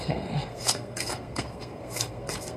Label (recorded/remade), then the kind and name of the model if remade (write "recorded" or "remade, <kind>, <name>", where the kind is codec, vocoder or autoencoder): remade, codec, SNAC